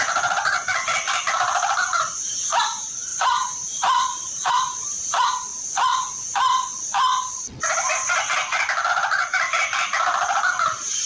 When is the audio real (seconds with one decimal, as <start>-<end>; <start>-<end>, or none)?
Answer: 0.6-1.2; 5.5-8.9

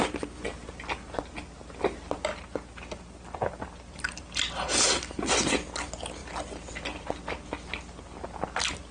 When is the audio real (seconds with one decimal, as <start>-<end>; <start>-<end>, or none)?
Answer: 0.0-8.9